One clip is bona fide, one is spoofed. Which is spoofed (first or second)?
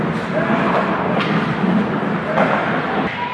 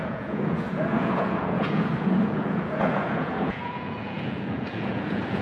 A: second